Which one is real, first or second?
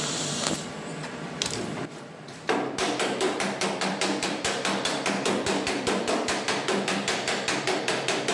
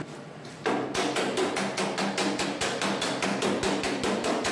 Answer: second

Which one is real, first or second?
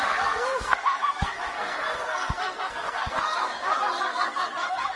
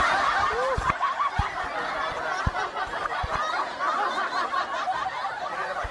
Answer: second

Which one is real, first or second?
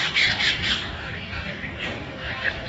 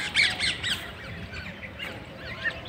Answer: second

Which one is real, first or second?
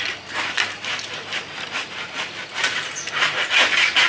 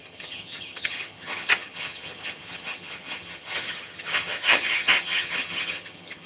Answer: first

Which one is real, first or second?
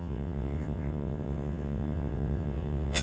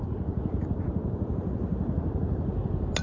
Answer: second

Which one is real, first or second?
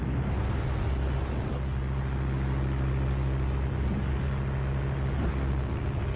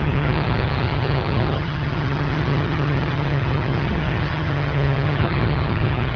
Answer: first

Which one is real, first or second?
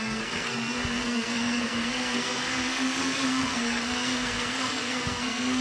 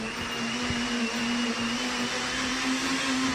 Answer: second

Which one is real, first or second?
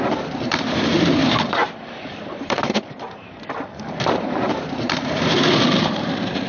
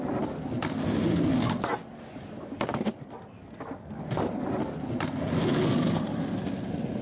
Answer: second